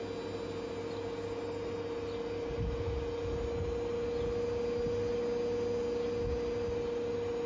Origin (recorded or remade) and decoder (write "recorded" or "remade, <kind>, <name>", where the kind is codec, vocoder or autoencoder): recorded